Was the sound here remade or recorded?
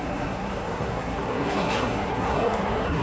remade